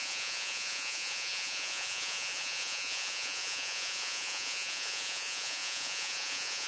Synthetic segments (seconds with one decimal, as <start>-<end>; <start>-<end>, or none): 0.0-6.7

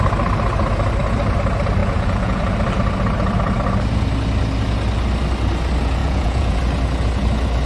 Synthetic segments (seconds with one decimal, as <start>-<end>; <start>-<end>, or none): 1.8-2.4; 6.0-6.6